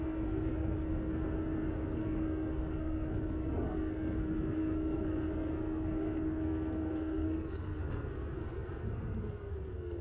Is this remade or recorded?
remade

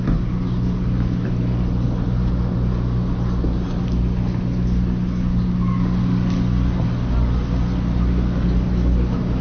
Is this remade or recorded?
recorded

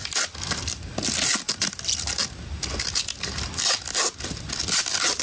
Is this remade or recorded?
recorded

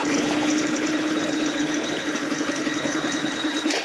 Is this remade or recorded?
remade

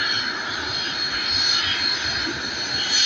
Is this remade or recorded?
recorded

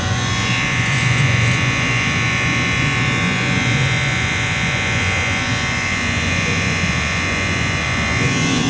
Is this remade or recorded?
remade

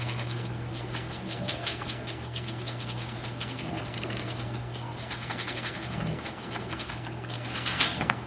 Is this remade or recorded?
remade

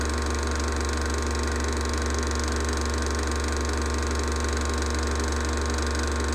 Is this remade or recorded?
recorded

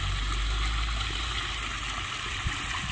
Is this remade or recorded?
recorded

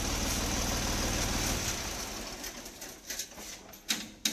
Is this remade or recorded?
recorded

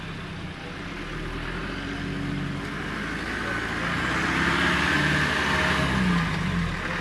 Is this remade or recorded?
recorded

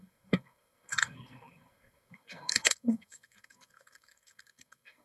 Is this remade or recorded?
remade